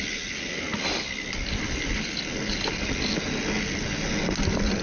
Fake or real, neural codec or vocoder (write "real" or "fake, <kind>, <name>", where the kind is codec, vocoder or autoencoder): real